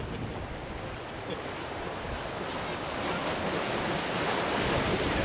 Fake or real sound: real